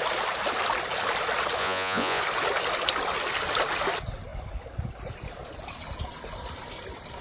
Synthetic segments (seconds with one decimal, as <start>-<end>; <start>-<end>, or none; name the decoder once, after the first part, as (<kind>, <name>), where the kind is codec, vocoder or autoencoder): 1.6-2.2 (vocoder, Vocos)